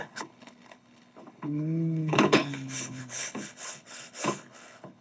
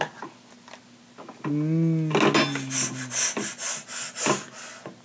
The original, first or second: second